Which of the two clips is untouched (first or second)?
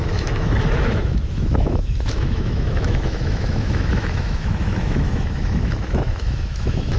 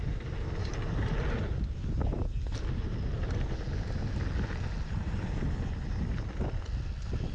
second